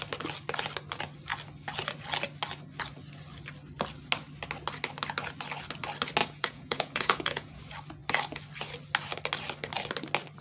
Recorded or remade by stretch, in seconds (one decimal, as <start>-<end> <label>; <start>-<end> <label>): 0.0-6.2 recorded; 6.2-7.6 remade; 7.6-10.4 recorded